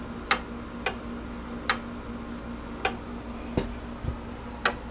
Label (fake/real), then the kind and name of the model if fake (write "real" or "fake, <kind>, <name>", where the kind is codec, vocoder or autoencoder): real